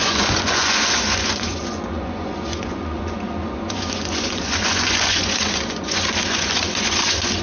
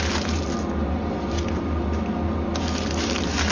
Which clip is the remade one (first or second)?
first